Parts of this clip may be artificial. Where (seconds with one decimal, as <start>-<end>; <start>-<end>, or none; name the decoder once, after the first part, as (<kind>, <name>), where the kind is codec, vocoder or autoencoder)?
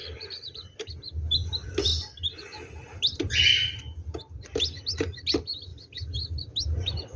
0.0-0.9 (vocoder, BigVGAN v2)